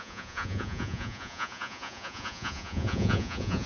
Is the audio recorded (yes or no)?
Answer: no